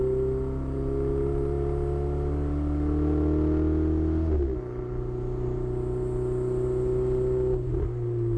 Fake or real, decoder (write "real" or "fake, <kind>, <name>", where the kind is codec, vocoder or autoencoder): real